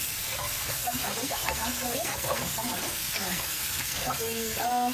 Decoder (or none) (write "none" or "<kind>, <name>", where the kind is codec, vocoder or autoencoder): codec, SNAC